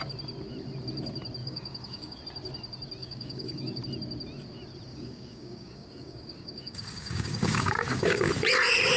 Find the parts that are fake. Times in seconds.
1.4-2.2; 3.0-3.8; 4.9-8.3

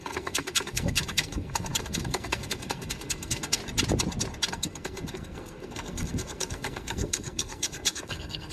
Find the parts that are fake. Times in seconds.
0.0-3.6; 4.5-8.5

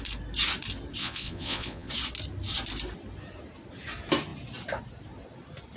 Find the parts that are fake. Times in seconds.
1.0-1.9

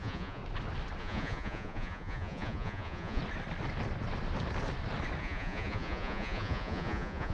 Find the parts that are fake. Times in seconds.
0.0-0.4; 1.0-3.2; 5.2-7.3

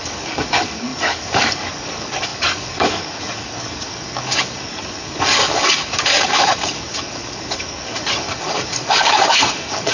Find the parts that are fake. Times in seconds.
0.0-9.9

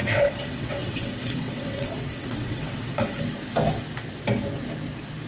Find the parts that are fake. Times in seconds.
0.0-3.2

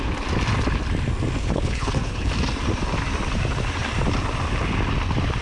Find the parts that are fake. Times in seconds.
1.4-2.3

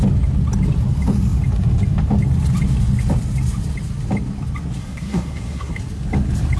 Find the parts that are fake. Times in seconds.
4.8-5.8